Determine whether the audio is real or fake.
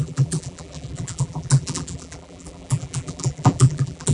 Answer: fake